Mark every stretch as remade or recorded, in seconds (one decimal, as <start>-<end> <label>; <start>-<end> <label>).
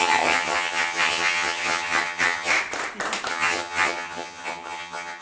0.0-2.5 remade; 2.5-3.3 recorded; 3.3-5.2 remade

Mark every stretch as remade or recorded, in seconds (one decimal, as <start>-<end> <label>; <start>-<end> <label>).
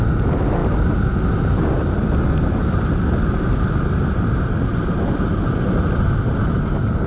0.0-7.1 recorded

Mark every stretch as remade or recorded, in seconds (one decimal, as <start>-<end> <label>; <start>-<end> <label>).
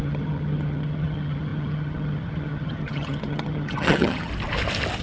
0.0-4.3 remade; 4.3-5.0 recorded